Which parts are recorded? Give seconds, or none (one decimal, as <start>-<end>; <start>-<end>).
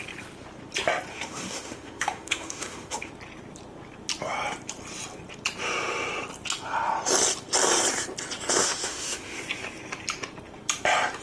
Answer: 0.0-1.1; 3.1-8.6; 9.4-11.2